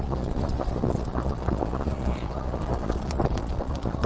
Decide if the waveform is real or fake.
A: fake